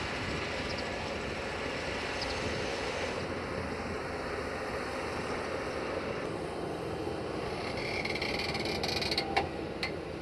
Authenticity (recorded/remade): recorded